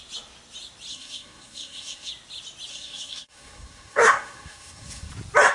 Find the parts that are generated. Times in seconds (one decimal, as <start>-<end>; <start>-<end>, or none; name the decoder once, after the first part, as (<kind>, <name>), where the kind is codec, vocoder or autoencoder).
0.9-2.1 (codec, SNAC); 2.7-5.1